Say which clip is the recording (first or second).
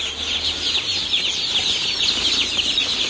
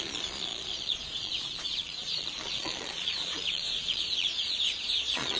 first